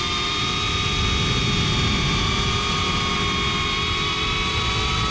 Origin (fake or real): real